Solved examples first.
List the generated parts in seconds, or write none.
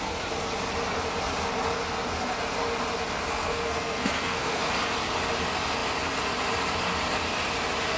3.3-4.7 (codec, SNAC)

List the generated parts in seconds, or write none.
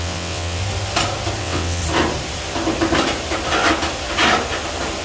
0.0-0.6 (vocoder, WaveNeXt); 1.4-1.8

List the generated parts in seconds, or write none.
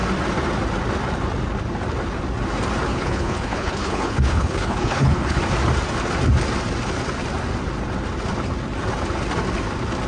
2.9-5.4 (codec, HILCodec)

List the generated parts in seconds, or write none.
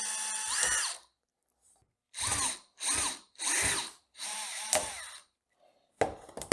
3.8-5.1 (vocoder, BigVGAN v2)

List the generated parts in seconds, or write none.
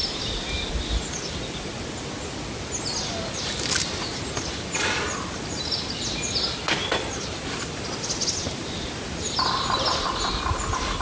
none